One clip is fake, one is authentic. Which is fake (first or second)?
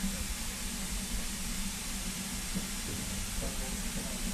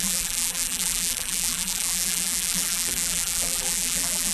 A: second